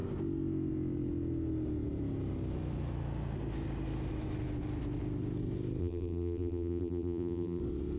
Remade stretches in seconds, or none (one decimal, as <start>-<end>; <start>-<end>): 5.8-7.6